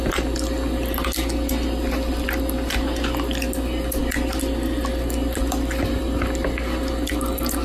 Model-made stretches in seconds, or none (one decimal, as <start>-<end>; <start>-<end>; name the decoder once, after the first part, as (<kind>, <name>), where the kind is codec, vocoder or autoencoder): none